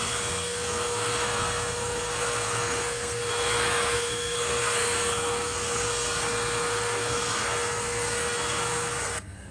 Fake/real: fake